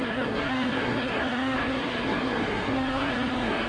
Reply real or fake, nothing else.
fake